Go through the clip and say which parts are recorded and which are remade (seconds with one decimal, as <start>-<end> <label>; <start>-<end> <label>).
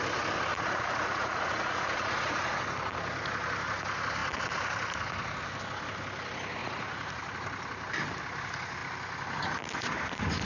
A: 0.0-0.5 recorded; 0.5-2.6 remade; 2.6-6.6 recorded; 6.6-7.2 remade; 7.2-10.4 recorded